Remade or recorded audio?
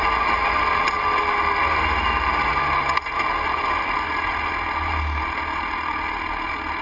recorded